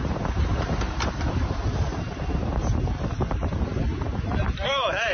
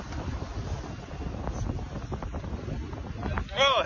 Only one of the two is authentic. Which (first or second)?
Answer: second